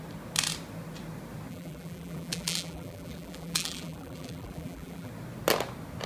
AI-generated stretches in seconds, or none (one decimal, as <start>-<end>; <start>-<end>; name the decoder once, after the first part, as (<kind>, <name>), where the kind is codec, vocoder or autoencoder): 1.5-5.1 (vocoder, BigVGAN v2)